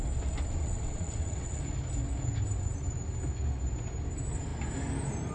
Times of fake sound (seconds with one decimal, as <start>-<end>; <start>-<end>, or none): 0.6-1.6